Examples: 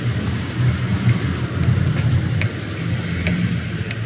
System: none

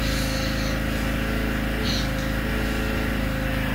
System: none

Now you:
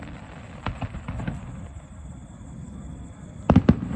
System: none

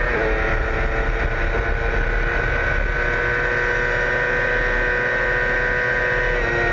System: none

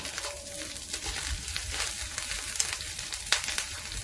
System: vocoder, BigVGAN v2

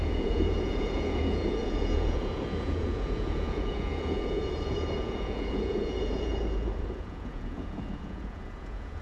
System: vocoder, Vocos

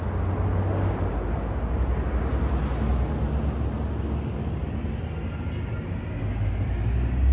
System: none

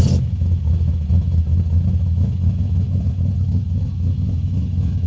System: autoencoder, DAC-VAE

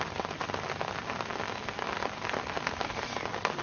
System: none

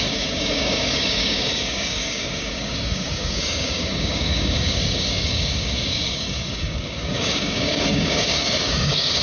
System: codec, DAC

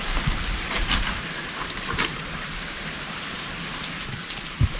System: vocoder, BigVGAN v2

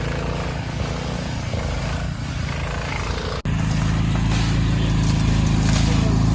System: none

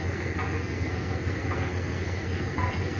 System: codec, SNAC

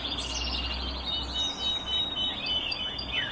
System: none